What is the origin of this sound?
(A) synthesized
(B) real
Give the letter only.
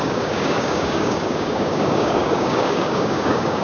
A